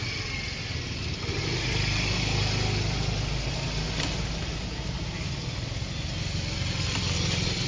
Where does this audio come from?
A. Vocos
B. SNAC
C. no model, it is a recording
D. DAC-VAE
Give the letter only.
C